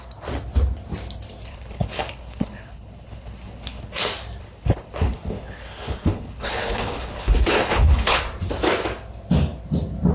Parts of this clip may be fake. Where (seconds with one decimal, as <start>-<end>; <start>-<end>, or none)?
1.5-4.0; 4.4-8.2